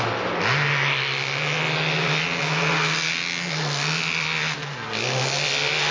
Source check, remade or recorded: recorded